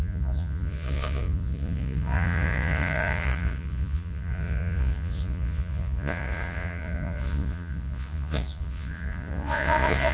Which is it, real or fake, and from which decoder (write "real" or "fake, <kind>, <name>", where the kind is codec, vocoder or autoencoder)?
fake, vocoder, Vocos